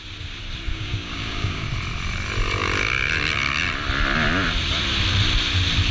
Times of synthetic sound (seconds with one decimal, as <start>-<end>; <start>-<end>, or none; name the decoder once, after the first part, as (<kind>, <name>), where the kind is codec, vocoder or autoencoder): 0.7-1.7 (codec, DAC)